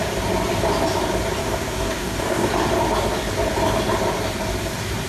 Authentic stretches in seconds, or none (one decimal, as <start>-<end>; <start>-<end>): 0.0-1.4; 2.5-5.1